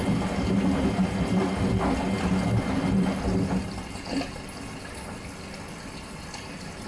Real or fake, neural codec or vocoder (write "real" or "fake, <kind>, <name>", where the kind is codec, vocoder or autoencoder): real